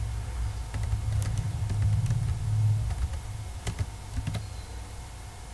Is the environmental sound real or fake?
real